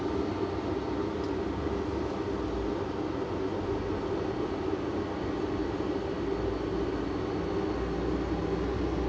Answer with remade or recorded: recorded